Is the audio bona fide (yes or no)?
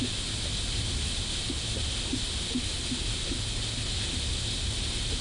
yes